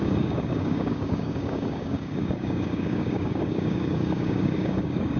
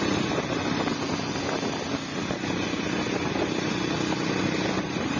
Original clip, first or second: second